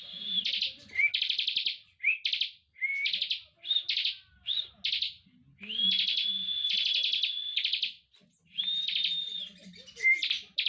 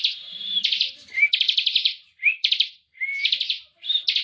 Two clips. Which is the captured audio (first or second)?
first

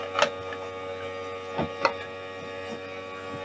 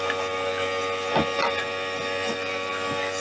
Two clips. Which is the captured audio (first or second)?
first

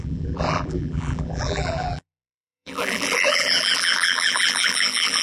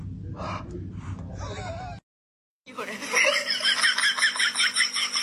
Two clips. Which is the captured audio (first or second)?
second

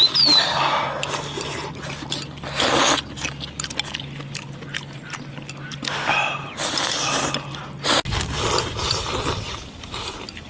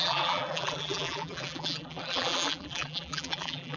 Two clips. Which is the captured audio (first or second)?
first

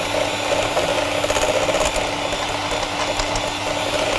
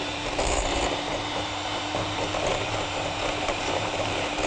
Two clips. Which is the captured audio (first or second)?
first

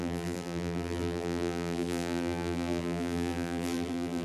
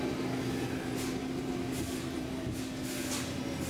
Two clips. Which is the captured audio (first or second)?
second